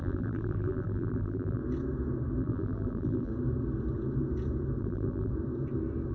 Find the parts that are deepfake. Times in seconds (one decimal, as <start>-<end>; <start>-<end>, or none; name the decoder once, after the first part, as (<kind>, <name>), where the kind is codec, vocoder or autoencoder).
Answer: 0.0-1.6 (vocoder, BigVGAN v2); 2.4-3.3; 4.8-5.3